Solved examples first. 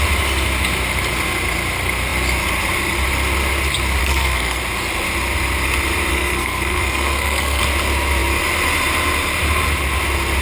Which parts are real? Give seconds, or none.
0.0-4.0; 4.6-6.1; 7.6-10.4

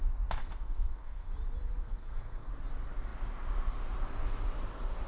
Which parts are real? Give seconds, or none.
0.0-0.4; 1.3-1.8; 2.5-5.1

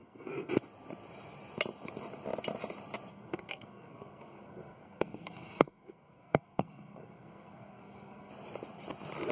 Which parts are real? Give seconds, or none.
0.5-3.1; 8.3-9.3

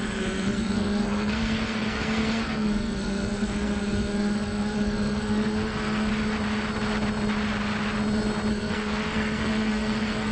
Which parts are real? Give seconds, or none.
6.1-8.5